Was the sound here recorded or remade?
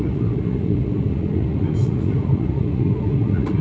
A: remade